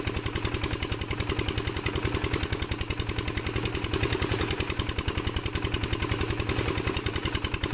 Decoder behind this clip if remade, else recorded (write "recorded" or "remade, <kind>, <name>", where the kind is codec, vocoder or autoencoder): recorded